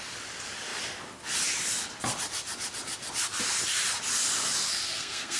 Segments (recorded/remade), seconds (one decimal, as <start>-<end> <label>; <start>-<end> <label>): 0.0-4.7 recorded; 4.7-5.4 remade